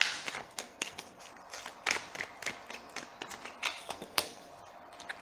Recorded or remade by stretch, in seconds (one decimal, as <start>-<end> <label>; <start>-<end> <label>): 0.0-0.4 recorded; 0.4-1.2 remade; 1.2-3.8 recorded; 3.8-4.5 remade; 4.5-5.2 recorded